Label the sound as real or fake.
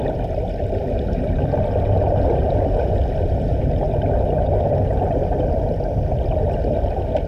real